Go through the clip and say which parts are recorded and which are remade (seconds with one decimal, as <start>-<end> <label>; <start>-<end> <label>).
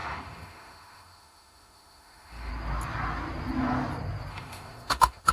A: 0.0-2.5 remade; 2.5-4.3 recorded; 4.3-5.3 remade